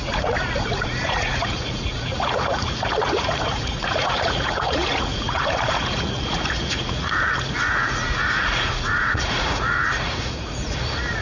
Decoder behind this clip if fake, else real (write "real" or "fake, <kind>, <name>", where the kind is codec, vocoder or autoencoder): fake, vocoder, Vocos